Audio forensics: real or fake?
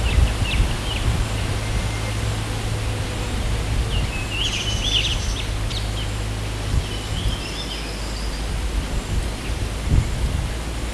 real